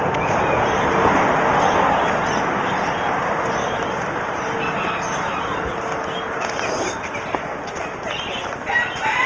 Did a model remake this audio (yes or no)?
no